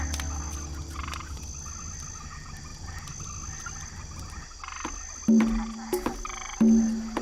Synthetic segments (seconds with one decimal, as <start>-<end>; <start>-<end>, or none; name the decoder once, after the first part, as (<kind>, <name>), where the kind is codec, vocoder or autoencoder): none